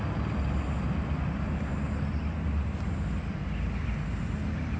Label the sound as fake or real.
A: real